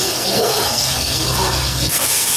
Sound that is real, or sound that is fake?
fake